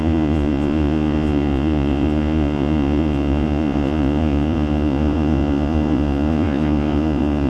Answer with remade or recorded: remade